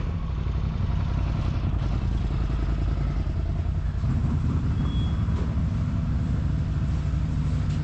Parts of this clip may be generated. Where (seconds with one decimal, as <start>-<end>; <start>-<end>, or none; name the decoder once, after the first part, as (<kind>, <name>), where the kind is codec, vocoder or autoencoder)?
4.2-5.0 (vocoder, BigVGAN v2)